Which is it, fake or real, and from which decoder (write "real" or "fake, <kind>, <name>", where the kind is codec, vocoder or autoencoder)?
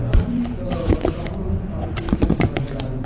fake, vocoder, Vocos